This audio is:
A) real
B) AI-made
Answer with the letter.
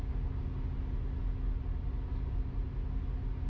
A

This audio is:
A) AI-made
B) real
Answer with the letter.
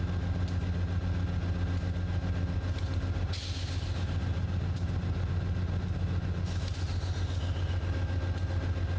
B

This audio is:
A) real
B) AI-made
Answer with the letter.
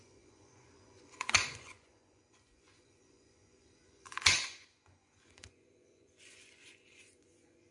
B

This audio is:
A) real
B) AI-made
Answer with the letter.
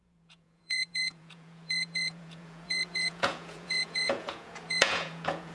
B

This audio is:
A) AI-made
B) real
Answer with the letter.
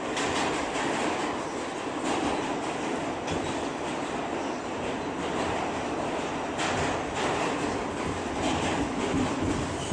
B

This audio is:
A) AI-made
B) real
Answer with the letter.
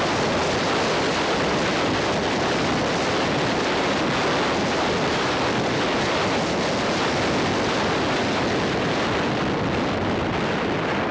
B